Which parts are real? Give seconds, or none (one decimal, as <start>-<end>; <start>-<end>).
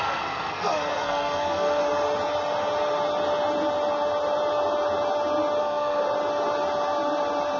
1.8-5.6; 6.0-7.6